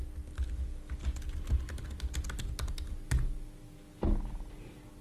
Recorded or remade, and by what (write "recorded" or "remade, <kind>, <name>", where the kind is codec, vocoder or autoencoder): recorded